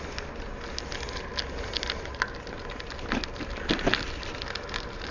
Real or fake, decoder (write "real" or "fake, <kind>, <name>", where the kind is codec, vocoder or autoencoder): real